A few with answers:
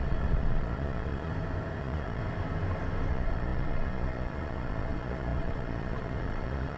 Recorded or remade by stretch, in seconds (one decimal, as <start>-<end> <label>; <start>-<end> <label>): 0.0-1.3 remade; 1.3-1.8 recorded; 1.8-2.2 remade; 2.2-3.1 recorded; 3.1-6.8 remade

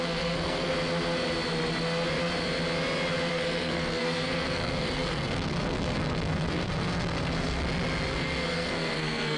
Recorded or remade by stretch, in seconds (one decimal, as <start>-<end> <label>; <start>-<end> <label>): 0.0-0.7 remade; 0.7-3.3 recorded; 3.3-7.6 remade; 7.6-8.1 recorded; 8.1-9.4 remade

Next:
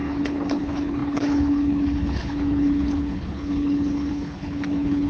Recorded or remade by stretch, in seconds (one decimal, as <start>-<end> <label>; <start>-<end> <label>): 0.0-5.1 remade